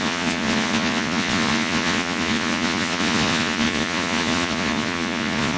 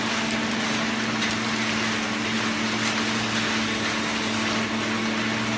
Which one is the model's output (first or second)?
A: first